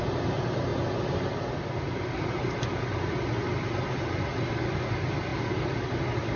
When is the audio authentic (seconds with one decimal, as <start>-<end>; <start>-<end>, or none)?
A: 0.7-4.5